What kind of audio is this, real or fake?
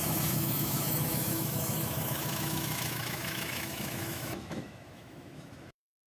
fake